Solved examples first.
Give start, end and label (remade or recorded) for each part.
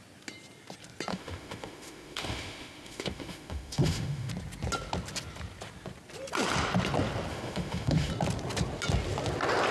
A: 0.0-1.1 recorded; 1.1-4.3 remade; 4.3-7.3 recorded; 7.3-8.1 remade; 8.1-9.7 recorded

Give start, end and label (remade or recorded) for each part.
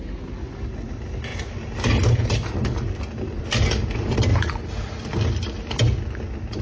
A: 0.0-4.3 recorded; 4.3-5.0 remade; 5.0-6.6 recorded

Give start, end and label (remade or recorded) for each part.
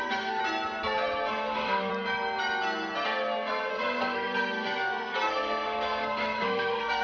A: 0.0-0.4 remade; 0.4-1.3 recorded; 1.3-1.9 remade; 1.9-3.7 recorded; 3.7-7.0 remade